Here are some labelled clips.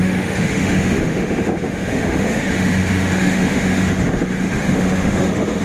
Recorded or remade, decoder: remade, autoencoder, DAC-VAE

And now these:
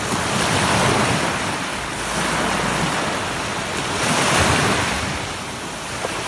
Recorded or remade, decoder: recorded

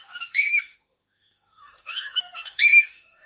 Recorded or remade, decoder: remade, autoencoder, DAC-VAE